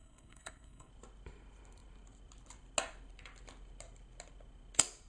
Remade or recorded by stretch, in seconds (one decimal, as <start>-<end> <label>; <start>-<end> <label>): 0.0-0.9 remade; 0.9-5.1 recorded